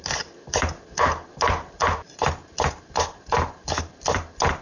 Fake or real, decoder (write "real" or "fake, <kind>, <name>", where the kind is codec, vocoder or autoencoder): real